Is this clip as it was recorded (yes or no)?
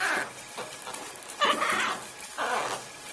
yes